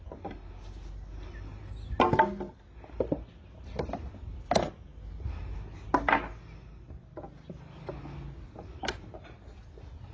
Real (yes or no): yes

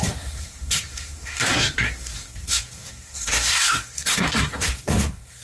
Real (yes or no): no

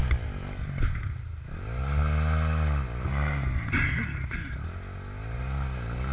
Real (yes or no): yes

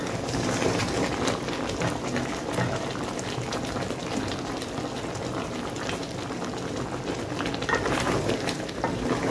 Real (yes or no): yes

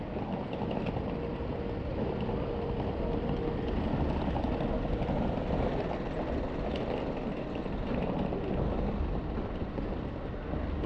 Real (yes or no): yes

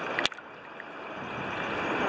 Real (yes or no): yes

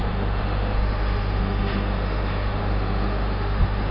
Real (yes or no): no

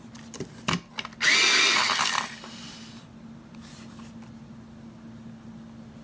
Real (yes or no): yes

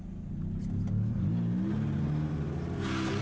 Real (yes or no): yes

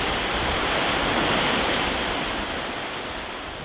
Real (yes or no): yes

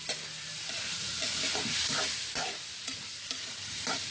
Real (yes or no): yes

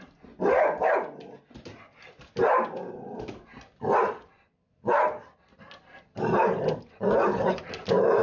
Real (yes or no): yes